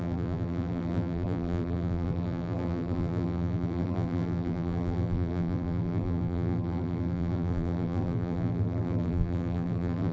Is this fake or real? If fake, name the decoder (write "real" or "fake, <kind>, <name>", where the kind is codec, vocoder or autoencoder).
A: fake, vocoder, BigVGAN v2